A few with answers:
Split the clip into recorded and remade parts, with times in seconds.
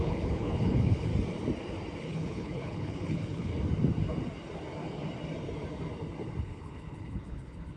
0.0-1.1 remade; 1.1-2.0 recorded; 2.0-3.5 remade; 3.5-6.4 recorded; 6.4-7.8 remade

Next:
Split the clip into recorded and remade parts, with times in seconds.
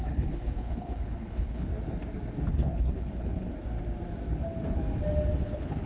0.0-1.7 remade; 1.7-2.5 recorded; 2.5-3.5 remade; 3.5-5.4 recorded; 5.4-5.9 remade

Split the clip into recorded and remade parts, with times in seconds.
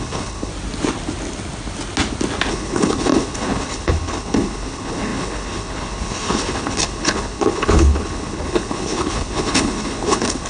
0.0-0.5 remade; 0.5-2.5 recorded; 2.5-10.5 remade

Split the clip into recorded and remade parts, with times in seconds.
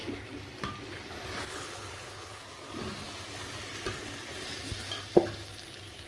0.0-1.5 recorded; 1.5-2.4 remade; 2.4-6.1 recorded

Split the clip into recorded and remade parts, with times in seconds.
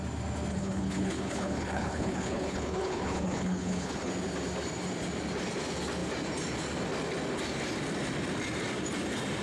0.0-0.5 recorded; 0.5-4.1 remade; 4.1-9.4 recorded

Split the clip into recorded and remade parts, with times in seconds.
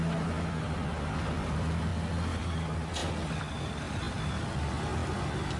0.0-5.6 recorded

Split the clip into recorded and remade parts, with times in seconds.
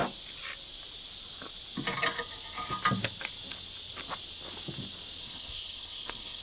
0.0-5.2 recorded; 5.2-6.4 remade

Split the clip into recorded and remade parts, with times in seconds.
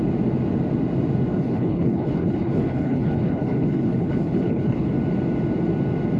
0.0-1.3 recorded; 1.3-4.9 remade; 4.9-6.2 recorded